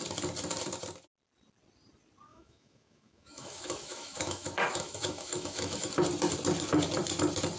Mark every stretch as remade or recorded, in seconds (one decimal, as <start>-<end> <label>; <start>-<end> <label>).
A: 0.0-2.3 recorded; 2.3-5.9 remade; 5.9-7.6 recorded